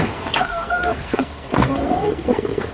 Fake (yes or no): yes